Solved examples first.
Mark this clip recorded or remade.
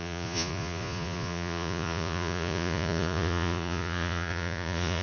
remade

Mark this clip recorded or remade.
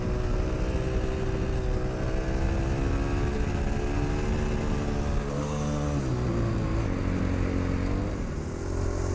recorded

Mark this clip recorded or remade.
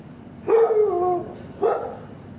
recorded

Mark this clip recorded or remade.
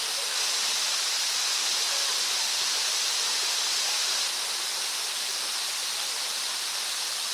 recorded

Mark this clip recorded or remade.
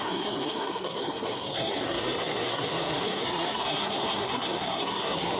remade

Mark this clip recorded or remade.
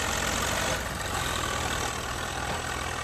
recorded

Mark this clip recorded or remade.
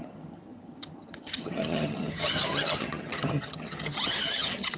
remade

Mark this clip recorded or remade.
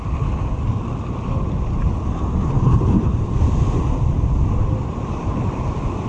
recorded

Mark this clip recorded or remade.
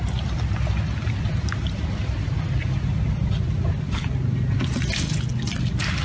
recorded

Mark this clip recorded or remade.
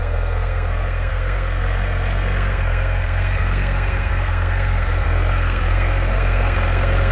remade